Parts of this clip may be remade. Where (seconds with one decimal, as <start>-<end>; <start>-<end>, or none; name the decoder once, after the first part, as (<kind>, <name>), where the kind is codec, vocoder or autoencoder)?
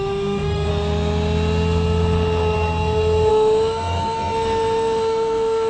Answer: 0.0-0.7 (autoencoder, DAC-VAE); 3.3-5.7